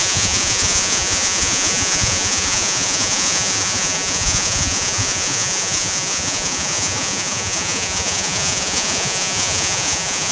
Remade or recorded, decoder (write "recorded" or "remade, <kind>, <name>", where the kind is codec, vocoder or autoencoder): remade, vocoder, Vocos